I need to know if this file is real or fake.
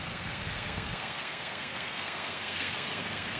fake